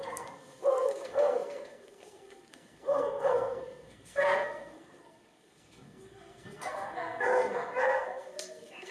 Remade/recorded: remade